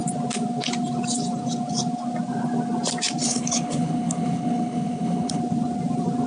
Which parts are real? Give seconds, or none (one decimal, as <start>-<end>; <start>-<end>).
0.0-3.2; 5.4-6.3